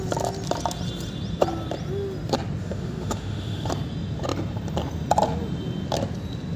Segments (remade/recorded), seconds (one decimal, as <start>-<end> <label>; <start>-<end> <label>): 0.0-2.6 recorded; 2.6-3.7 remade; 3.7-6.6 recorded